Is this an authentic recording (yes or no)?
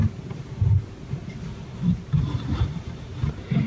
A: yes